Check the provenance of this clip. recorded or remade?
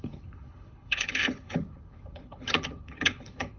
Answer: remade